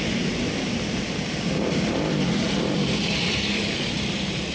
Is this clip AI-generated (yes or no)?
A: no